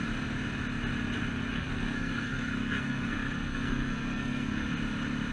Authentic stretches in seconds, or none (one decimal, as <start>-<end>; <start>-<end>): 0.0-1.5; 4.7-5.3